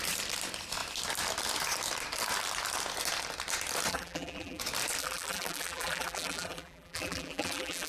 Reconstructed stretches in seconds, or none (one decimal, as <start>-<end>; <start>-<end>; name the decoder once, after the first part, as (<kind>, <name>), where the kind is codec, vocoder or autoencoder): 3.9-4.6 (vocoder, BigVGAN v2); 5.0-7.9